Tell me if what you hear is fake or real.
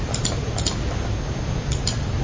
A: real